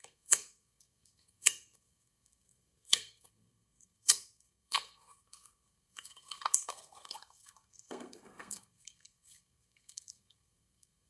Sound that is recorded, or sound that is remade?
remade